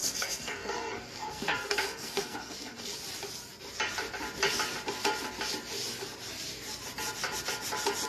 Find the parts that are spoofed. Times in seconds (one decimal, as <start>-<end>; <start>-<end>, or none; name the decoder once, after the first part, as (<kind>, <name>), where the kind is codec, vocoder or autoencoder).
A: 0.0-3.0 (codec, SNAC)